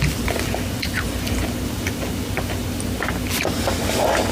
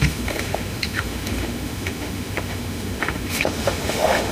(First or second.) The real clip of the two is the first